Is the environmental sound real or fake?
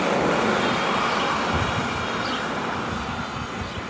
real